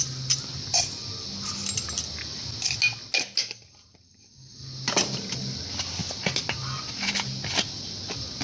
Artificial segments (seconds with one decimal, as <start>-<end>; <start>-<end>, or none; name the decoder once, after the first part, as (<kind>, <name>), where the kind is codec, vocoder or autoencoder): none